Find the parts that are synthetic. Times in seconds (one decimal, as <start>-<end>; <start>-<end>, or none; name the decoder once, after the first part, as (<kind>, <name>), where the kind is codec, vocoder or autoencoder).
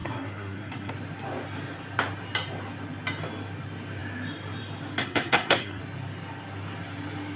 0.0-0.9 (codec, SNAC); 5.0-5.8